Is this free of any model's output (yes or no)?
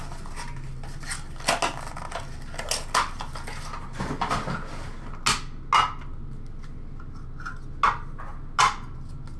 yes